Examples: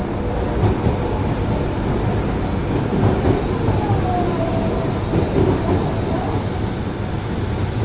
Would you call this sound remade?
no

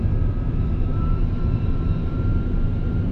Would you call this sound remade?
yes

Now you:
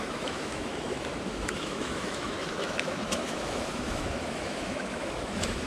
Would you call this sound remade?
yes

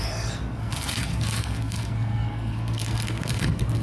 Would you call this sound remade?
yes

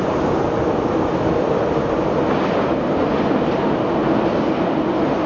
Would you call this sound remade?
no